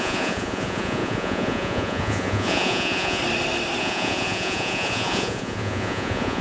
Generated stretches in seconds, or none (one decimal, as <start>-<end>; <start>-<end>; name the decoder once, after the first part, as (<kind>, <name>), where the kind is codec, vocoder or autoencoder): 0.0-3.2 (vocoder, Vocos); 3.8-6.4